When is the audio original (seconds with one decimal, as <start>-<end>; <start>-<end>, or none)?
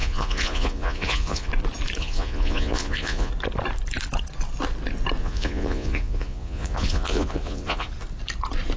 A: 1.5-2.0; 3.3-5.2; 7.9-8.8